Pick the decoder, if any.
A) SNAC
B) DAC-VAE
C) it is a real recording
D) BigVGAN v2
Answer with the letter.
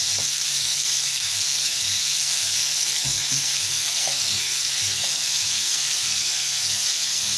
A